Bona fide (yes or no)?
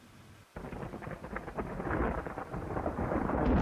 no